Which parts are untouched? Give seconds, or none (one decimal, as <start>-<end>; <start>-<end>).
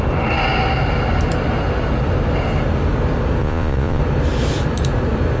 0.0-3.4; 4.0-5.4